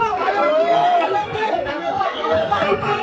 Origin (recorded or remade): remade